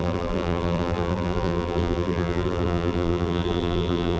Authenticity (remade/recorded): remade